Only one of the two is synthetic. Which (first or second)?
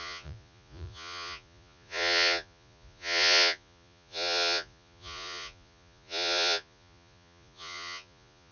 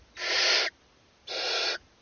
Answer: first